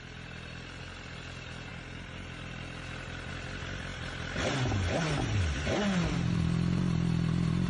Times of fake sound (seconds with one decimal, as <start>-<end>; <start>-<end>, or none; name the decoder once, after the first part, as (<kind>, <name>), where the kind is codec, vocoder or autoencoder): none